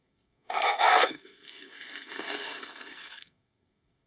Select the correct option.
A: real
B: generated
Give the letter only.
B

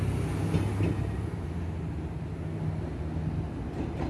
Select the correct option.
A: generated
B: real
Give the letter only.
B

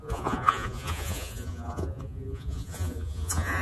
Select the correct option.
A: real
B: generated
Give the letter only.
B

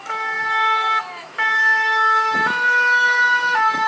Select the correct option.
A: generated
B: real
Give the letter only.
A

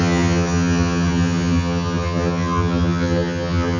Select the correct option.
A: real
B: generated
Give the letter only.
B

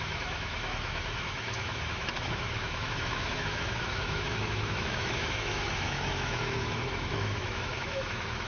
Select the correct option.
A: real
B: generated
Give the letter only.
B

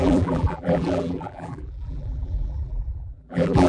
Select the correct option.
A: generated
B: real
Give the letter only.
A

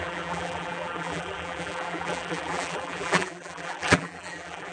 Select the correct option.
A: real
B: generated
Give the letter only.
B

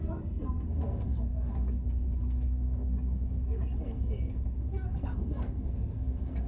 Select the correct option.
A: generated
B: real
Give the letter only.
A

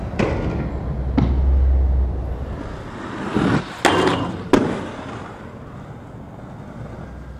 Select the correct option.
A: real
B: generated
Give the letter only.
A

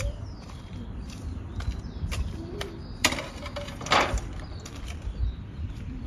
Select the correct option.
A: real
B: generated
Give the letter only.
B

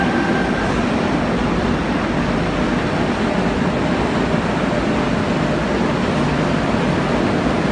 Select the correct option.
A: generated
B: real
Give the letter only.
B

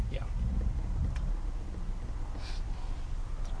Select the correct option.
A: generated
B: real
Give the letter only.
B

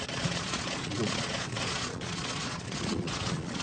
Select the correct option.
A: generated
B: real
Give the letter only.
A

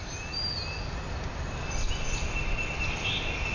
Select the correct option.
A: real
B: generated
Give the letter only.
A